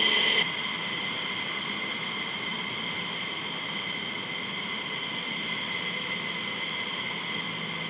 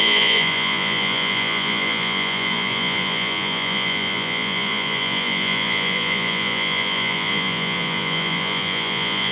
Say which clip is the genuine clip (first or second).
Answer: first